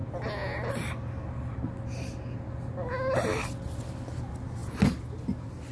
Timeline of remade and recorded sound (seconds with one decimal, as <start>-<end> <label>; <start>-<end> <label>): 0.0-5.7 recorded